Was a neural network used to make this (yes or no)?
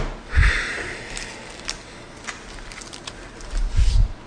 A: no